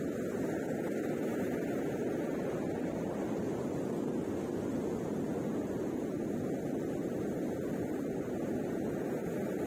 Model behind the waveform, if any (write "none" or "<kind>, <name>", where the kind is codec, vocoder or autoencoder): none